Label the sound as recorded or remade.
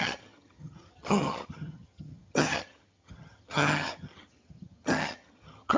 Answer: remade